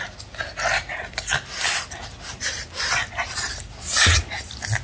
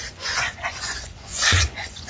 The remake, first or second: second